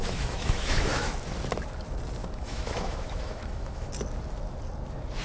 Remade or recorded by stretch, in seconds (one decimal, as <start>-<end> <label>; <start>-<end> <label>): 0.0-1.1 remade; 1.1-2.2 recorded; 2.2-3.9 remade; 3.9-5.2 recorded